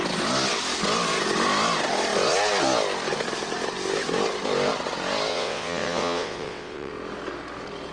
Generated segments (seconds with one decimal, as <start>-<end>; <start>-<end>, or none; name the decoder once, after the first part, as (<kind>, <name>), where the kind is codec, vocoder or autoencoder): 5.3-6.9 (vocoder, WaveNeXt)